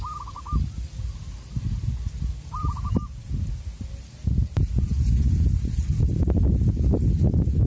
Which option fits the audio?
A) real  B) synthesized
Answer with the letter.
A